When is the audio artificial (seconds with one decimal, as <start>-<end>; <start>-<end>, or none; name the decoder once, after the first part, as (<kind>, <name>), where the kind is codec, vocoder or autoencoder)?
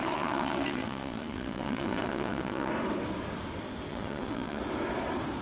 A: 0.0-2.7 (vocoder, WaveNeXt); 3.9-4.6